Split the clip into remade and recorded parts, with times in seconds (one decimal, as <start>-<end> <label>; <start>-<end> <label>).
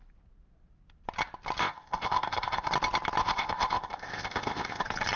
0.0-1.6 recorded; 1.6-2.7 remade; 2.7-3.2 recorded; 3.2-4.8 remade; 4.8-5.2 recorded